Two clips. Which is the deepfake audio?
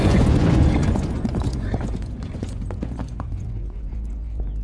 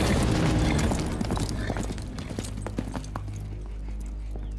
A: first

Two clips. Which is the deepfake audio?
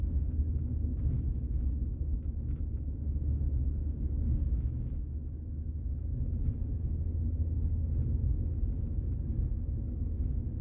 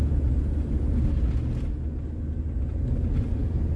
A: first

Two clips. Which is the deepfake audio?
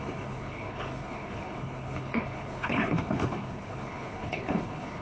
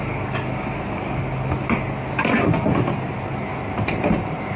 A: first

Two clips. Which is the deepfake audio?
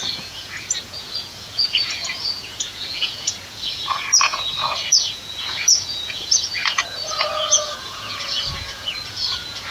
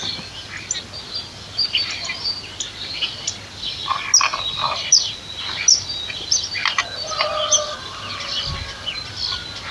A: first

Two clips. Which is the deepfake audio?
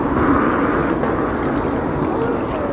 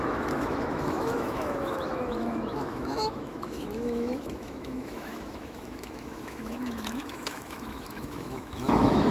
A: second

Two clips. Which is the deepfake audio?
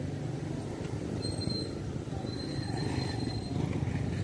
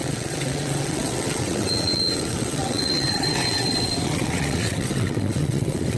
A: second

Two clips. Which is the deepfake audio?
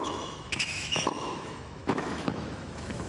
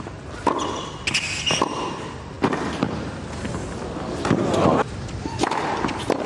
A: first